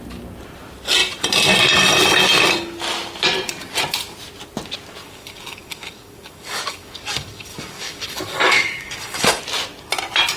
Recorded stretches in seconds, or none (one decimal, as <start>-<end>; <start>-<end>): 0.0-5.0; 9.4-10.4